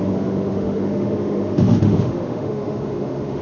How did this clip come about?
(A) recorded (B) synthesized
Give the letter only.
B